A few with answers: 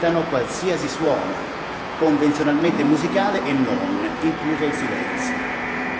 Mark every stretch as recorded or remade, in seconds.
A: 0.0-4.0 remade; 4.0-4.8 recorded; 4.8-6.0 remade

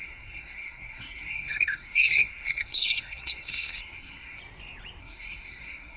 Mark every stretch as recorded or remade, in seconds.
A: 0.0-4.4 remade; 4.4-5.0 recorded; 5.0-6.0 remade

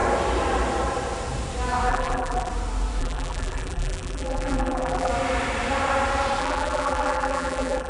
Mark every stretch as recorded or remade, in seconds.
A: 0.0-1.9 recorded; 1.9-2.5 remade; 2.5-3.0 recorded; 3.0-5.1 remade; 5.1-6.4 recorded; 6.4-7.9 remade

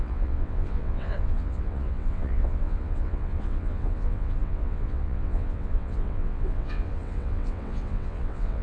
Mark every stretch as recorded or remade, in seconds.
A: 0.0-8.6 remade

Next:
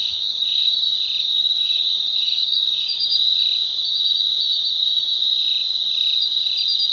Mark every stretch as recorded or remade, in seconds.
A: 0.0-0.7 remade; 0.7-1.2 recorded; 1.2-3.2 remade; 3.2-6.9 recorded

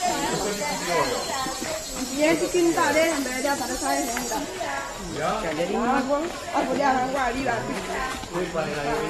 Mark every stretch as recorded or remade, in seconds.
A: 0.0-9.1 recorded

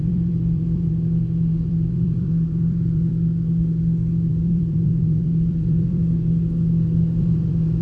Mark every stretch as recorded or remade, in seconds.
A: 0.0-0.9 remade; 0.9-1.5 recorded; 1.5-3.1 remade; 3.1-4.3 recorded; 4.3-6.0 remade; 6.0-7.2 recorded; 7.2-7.8 remade